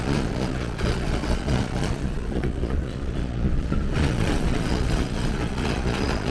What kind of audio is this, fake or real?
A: fake